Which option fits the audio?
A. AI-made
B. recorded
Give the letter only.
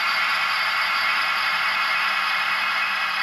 A